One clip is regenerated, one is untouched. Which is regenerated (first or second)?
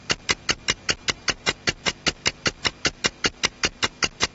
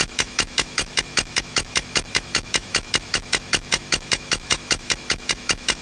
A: second